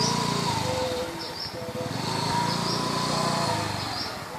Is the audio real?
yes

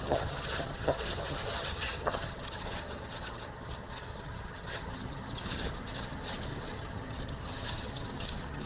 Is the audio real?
no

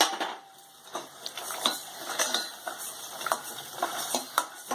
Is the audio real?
no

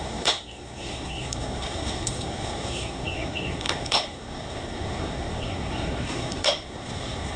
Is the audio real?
no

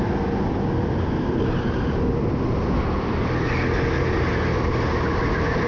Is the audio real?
yes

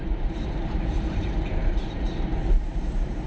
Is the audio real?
no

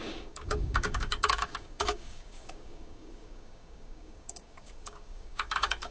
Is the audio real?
no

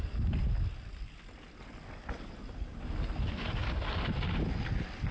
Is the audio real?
yes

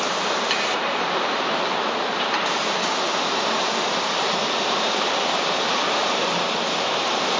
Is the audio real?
no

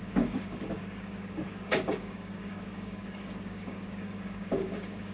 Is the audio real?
no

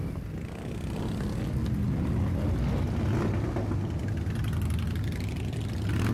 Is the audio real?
yes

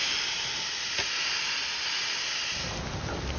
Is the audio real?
yes